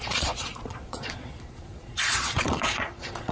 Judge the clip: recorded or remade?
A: remade